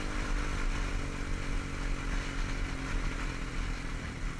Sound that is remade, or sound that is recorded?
recorded